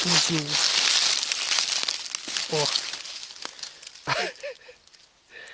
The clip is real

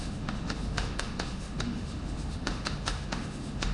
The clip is fake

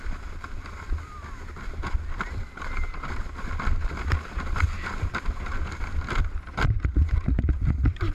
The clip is real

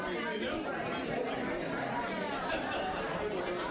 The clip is real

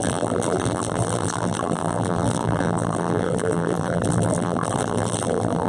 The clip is fake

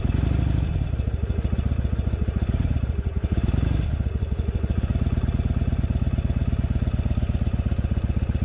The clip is real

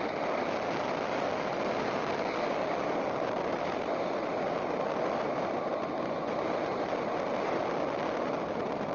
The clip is real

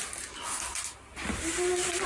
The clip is real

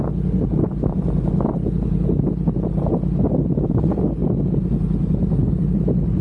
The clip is real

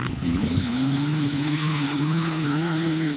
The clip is fake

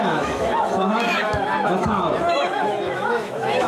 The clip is fake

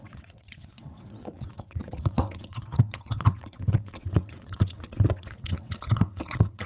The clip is fake